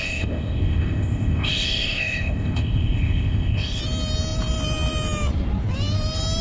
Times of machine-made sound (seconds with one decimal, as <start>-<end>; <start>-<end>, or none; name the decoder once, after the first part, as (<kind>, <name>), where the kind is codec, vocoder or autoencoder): 0.0-3.8 (codec, ZipCodec)